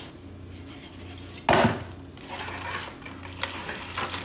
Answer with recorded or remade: recorded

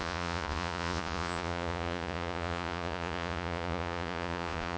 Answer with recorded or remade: remade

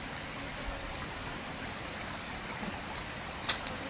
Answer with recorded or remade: recorded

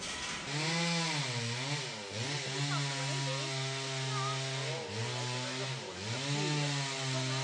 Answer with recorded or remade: recorded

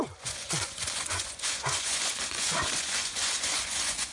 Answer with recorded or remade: remade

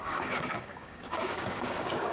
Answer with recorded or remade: remade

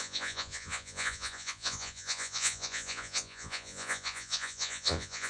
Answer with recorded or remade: remade